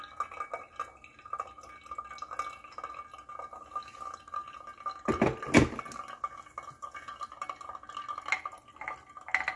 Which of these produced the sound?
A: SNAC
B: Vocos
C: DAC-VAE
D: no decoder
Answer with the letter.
D